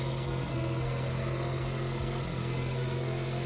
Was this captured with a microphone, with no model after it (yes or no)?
no